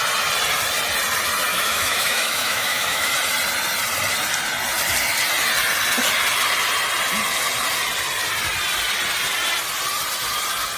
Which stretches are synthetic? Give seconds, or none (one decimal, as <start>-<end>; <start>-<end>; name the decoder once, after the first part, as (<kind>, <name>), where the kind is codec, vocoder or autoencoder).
1.5-3.1 (autoencoder, DAC-VAE)